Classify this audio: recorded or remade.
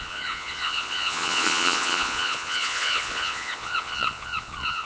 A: remade